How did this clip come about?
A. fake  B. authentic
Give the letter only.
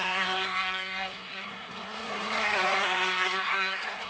A